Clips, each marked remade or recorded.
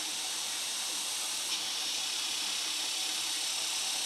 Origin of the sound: recorded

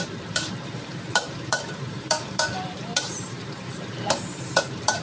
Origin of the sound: remade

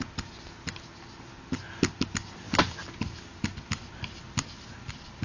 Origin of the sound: recorded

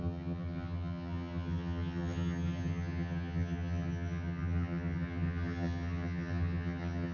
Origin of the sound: remade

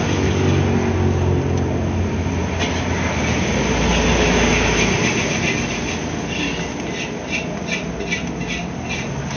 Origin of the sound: recorded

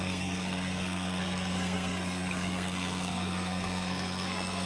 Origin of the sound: remade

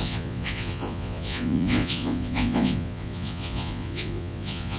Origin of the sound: remade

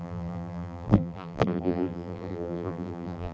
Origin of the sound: remade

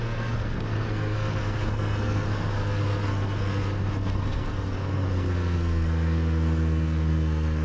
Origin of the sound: remade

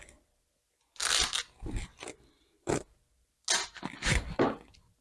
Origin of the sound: recorded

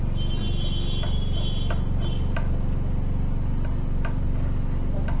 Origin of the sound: recorded